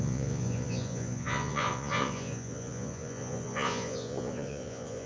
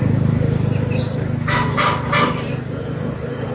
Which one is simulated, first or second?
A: first